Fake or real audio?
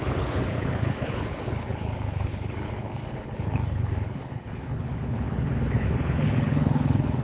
fake